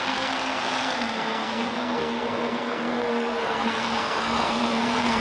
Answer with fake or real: fake